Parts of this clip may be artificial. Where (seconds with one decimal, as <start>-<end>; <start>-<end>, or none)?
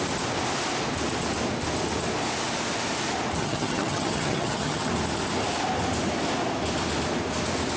3.4-4.9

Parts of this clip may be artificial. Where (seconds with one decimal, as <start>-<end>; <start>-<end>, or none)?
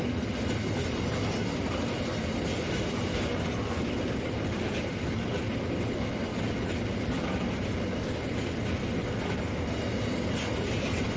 none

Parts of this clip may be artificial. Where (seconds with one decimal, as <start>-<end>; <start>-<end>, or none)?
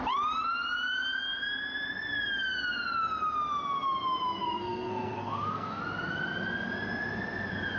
4.4-5.8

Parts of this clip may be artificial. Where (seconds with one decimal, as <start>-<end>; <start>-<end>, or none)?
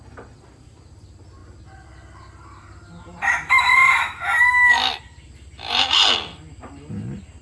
none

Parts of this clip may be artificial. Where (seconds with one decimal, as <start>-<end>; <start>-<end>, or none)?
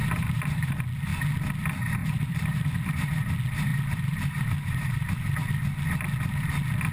0.0-0.7; 2.0-3.3; 3.7-5.5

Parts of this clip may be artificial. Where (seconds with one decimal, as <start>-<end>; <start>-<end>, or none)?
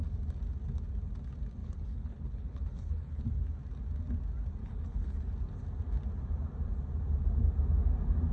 1.6-3.2; 4.6-5.3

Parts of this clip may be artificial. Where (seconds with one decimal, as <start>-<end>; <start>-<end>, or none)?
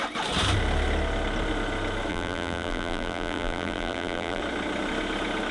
2.1-4.4